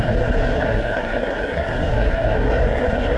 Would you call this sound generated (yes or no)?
yes